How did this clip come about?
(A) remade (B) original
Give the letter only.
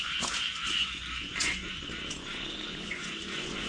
A